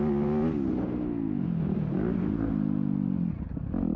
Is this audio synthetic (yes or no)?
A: no